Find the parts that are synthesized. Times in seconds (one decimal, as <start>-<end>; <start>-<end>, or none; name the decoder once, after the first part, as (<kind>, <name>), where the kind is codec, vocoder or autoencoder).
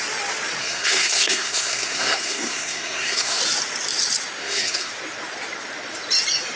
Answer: 0.6-3.4 (codec, SNAC); 4.4-4.9